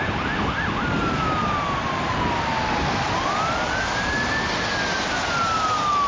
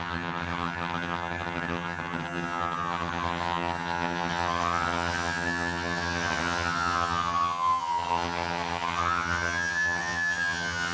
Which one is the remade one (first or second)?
second